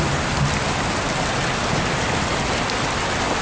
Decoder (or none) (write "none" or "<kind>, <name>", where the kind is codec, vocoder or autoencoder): none